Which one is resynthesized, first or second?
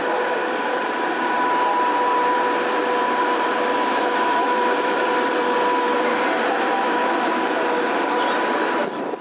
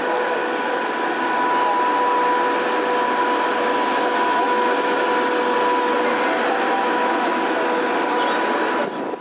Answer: first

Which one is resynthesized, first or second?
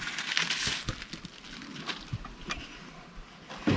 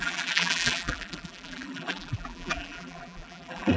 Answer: second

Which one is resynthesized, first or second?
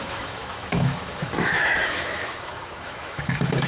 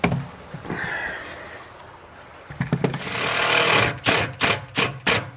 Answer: first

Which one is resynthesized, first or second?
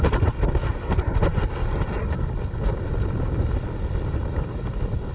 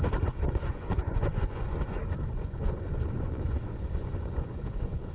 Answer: second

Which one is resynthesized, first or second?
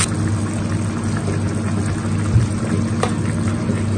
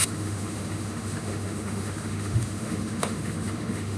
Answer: second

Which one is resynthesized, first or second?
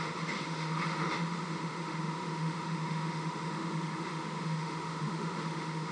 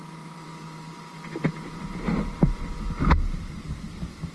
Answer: first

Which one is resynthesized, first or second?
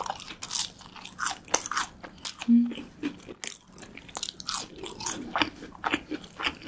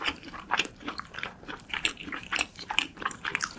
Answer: second